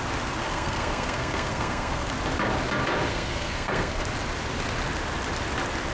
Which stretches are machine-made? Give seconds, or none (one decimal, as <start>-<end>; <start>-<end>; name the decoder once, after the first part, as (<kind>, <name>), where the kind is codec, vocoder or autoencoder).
0.4-2.1 (codec, SNAC); 3.1-4.0